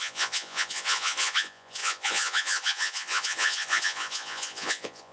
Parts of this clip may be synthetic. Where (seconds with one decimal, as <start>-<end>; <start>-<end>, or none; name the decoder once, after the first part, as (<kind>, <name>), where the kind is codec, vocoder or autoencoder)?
0.0-5.1 (vocoder, Vocos)